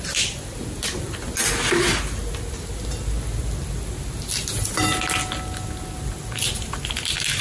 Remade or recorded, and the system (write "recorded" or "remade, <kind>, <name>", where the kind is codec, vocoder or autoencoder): recorded